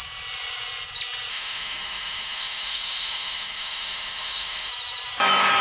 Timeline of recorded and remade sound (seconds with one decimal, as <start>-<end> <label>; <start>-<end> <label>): 0.0-1.3 recorded; 1.3-4.7 remade; 4.7-5.6 recorded